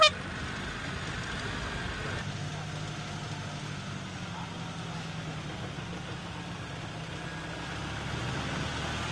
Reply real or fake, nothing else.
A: real